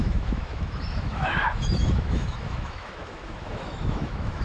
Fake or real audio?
fake